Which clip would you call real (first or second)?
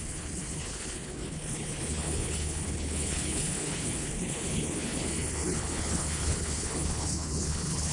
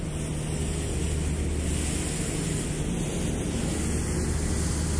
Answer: second